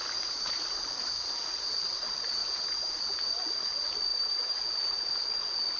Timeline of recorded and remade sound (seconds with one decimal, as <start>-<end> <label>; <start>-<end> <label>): 0.0-0.5 remade; 0.5-2.4 recorded; 2.4-3.0 remade; 3.0-4.1 recorded; 4.1-4.6 remade; 4.6-5.8 recorded